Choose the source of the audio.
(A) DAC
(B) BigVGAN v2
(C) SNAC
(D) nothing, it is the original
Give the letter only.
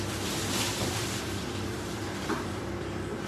B